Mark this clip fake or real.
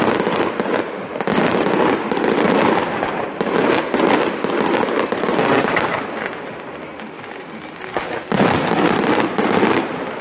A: real